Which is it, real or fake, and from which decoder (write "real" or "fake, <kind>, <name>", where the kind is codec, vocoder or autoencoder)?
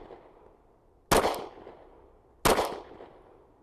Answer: real